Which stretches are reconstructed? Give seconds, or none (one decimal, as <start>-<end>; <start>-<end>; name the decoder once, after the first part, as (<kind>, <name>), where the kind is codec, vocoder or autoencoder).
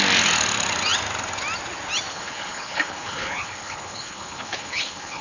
2.1-5.2 (codec, HILCodec)